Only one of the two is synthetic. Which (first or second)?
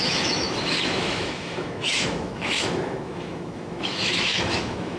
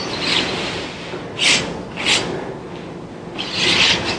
first